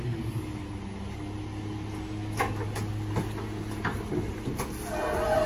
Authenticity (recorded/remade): recorded